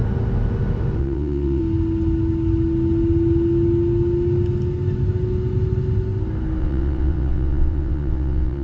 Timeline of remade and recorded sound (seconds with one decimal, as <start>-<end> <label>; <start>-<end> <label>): 0.0-1.0 recorded; 1.0-1.6 remade; 1.6-6.6 recorded; 6.6-8.6 remade